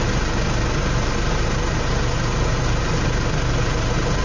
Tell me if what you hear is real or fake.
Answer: real